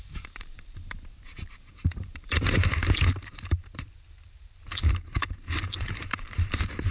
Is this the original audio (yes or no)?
no